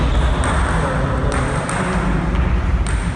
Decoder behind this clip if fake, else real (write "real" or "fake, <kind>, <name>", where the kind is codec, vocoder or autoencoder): real